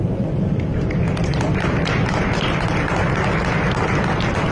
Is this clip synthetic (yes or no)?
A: yes